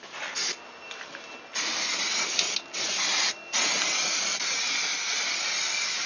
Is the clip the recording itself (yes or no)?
yes